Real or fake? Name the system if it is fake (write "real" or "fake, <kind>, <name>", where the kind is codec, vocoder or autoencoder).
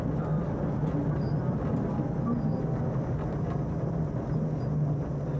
real